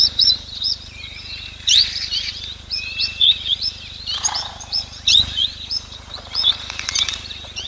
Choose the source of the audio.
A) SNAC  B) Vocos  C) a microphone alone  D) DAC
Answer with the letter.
B